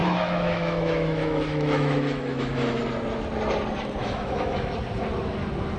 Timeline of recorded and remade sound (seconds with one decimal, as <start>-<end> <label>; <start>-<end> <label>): 0.0-2.8 remade; 2.8-4.0 recorded; 4.0-4.7 remade; 4.7-5.8 recorded